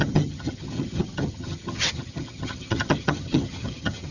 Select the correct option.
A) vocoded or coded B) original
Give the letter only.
A